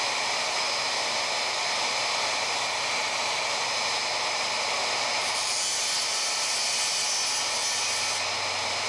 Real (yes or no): yes